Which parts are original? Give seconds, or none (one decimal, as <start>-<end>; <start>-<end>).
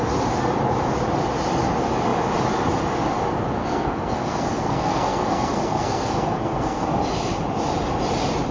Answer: 0.0-3.6; 6.9-8.5